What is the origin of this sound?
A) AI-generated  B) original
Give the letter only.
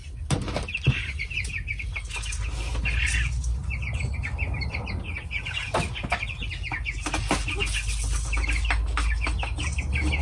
B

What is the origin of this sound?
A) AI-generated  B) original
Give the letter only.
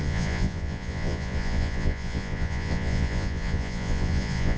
A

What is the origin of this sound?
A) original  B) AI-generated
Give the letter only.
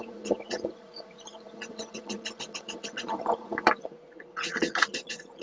B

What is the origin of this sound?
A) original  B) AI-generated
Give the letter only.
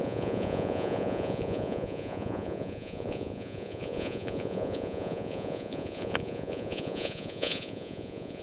B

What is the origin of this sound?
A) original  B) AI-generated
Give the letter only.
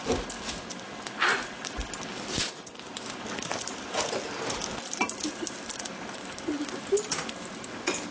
A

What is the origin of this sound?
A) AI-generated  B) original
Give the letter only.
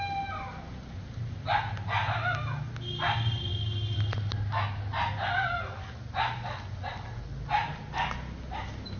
B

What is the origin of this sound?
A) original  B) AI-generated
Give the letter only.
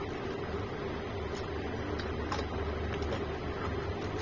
A